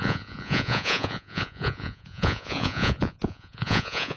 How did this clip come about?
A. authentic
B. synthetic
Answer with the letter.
B